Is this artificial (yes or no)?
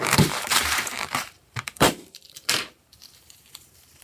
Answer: yes